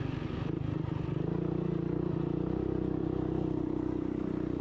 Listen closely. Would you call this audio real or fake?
real